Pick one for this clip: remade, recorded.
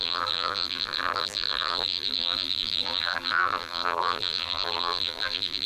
remade